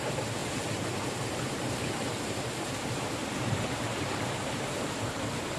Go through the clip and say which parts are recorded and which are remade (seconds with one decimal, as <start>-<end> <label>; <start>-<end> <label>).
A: 0.0-5.6 remade